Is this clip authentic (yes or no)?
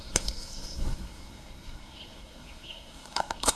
no